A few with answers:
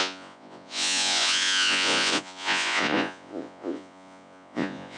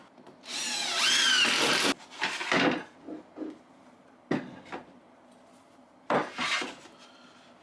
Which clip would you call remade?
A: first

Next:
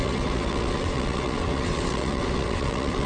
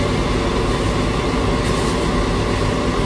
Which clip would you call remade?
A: first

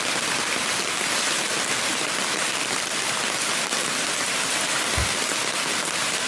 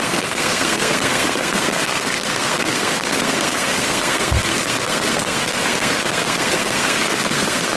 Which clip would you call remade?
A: second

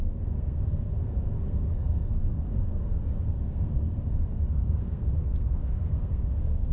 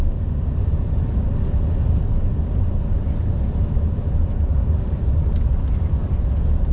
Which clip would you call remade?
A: first